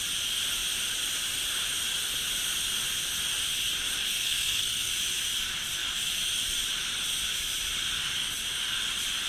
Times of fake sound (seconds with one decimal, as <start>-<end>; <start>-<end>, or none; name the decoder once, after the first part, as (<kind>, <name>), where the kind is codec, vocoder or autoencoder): 4.1-4.9 (codec, SNAC)